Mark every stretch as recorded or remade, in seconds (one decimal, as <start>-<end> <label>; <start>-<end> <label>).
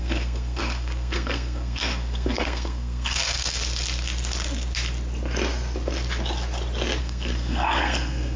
0.0-3.6 remade; 3.6-7.0 recorded; 7.0-8.4 remade